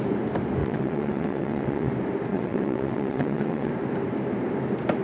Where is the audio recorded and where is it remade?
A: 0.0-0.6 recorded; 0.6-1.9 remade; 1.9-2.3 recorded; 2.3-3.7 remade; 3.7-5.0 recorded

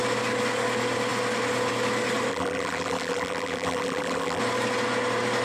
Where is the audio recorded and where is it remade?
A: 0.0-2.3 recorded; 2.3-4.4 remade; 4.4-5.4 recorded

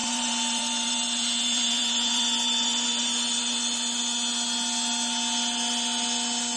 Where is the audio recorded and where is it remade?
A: 0.0-4.0 remade; 4.0-6.6 recorded

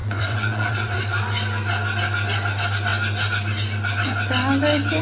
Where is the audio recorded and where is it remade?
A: 0.0-1.0 remade; 1.0-5.0 recorded